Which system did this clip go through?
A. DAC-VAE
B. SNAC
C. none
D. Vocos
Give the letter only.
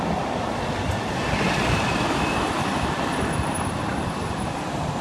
C